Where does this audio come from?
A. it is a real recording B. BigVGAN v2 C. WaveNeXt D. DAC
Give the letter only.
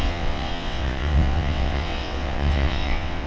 C